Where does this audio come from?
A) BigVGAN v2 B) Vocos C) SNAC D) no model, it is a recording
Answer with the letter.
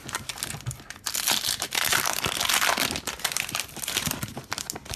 D